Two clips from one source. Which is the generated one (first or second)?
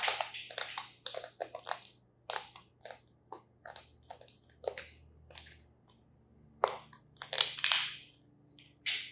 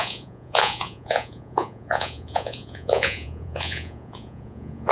second